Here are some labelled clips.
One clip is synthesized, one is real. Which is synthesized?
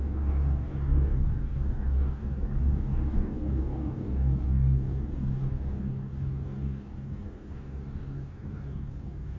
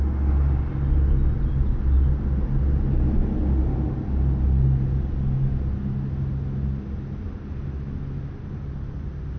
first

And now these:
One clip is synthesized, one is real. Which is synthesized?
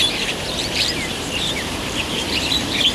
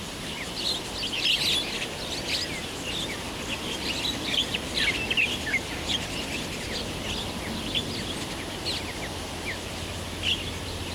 first